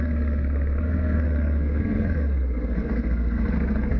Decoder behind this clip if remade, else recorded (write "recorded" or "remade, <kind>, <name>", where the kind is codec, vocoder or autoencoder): remade, codec, SNAC